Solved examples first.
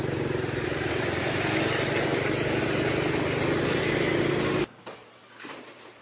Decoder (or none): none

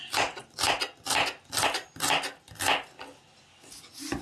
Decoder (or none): none